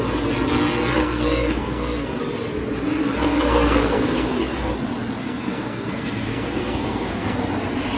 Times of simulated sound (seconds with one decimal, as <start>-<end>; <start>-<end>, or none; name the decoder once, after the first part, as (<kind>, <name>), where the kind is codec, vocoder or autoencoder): 1.0-2.2 (codec, SNAC); 3.0-4.7; 5.2-7.5